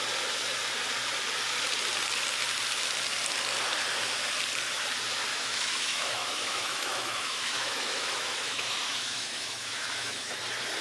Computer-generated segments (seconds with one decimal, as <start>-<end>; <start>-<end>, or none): 5.3-10.4